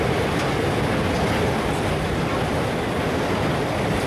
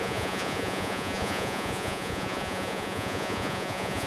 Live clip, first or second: first